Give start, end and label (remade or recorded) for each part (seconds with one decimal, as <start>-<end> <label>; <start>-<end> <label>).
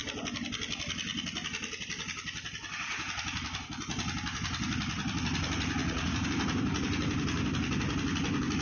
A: 0.0-5.8 recorded; 5.8-6.3 remade; 6.3-8.6 recorded